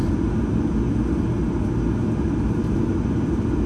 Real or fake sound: real